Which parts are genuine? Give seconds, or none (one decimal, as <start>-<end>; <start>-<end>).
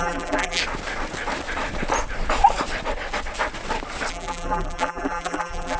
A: 0.6-4.1